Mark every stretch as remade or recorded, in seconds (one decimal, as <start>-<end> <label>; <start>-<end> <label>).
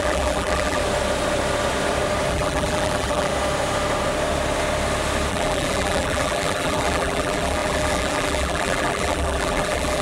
0.0-0.8 remade; 0.8-2.3 recorded; 2.3-3.3 remade; 3.3-5.3 recorded; 5.3-10.0 remade